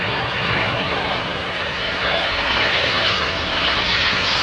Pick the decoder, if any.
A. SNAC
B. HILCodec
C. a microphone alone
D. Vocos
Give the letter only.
A